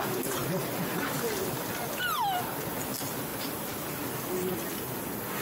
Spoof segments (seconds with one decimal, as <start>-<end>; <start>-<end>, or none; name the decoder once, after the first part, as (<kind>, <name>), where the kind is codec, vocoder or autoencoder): none